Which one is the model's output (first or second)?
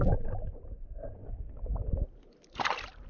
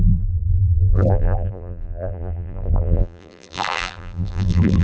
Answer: second